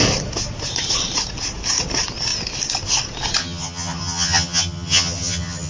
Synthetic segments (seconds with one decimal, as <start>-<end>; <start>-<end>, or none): 3.4-5.7